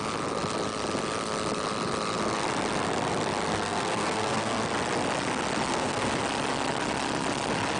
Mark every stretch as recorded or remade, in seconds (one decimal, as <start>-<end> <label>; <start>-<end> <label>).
0.0-3.5 recorded; 3.5-4.6 remade; 4.6-5.7 recorded; 5.7-6.2 remade; 6.2-7.8 recorded